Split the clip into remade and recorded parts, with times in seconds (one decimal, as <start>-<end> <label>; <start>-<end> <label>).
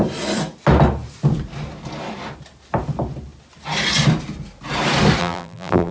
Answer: 0.0-5.2 recorded; 5.2-5.9 remade